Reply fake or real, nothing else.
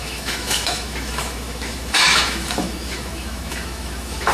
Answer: fake